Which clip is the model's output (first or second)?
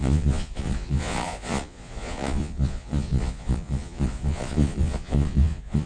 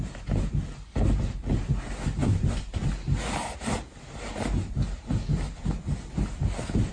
first